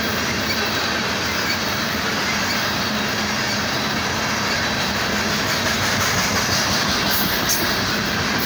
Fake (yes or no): no